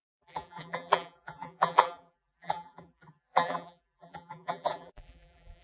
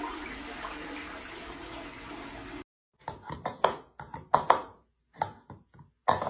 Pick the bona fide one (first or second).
second